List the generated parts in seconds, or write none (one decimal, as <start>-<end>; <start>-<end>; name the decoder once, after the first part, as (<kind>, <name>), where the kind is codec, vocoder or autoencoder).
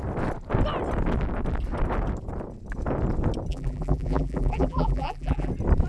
3.5-5.5 (vocoder, BigVGAN v2)